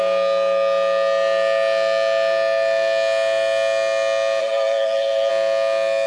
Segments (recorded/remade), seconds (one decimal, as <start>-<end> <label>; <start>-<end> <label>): 0.0-4.4 recorded; 4.4-5.3 remade; 5.3-6.1 recorded